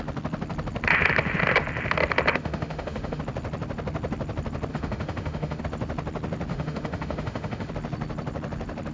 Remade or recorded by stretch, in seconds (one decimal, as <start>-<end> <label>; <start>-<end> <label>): 0.0-2.4 recorded; 2.4-3.2 remade; 3.2-4.7 recorded; 4.7-5.6 remade; 5.6-6.5 recorded; 6.5-7.7 remade; 7.7-8.9 recorded